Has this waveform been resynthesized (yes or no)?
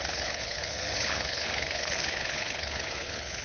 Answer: yes